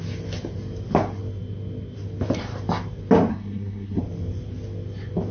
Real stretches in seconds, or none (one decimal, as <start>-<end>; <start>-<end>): 0.0-3.3; 4.0-5.3